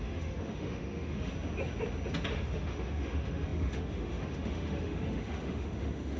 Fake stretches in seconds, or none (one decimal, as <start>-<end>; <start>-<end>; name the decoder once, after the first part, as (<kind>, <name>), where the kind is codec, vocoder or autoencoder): 0.0-1.3 (autoencoder, DAC-VAE); 2.3-6.2